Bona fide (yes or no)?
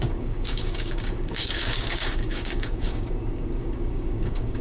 no